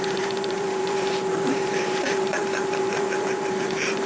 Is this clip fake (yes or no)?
yes